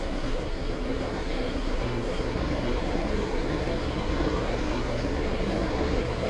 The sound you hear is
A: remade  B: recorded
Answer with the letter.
A